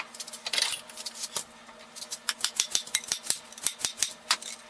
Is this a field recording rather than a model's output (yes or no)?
yes